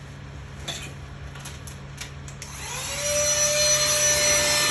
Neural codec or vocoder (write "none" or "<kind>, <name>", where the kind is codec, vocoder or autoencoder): none